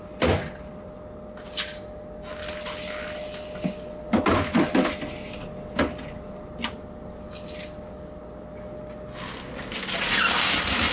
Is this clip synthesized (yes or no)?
no